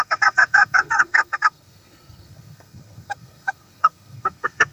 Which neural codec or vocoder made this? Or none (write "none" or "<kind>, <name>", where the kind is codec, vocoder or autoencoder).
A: codec, SNAC